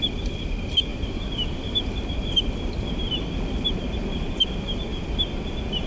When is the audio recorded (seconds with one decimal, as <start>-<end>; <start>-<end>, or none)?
0.0-0.9; 4.4-5.9